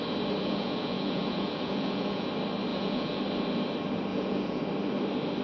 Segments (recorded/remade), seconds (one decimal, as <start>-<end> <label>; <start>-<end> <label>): 0.0-0.4 recorded; 0.4-2.3 remade; 2.3-2.7 recorded; 2.7-3.2 remade; 3.2-4.1 recorded; 4.1-4.6 remade; 4.6-5.4 recorded